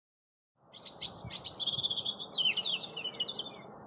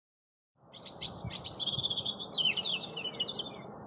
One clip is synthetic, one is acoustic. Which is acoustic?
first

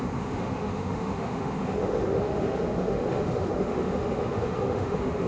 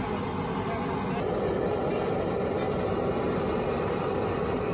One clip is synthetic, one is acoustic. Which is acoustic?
second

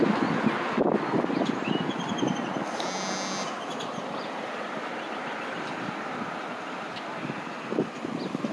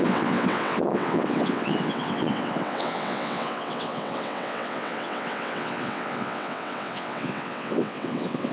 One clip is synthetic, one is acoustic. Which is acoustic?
first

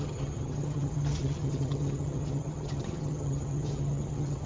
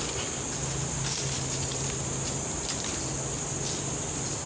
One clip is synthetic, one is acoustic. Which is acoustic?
second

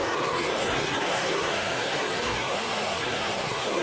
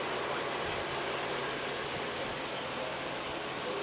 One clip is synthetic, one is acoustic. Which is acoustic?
second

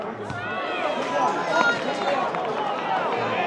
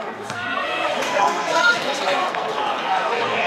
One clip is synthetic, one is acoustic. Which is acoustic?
first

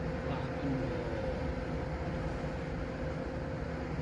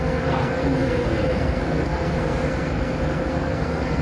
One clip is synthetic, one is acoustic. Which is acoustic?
first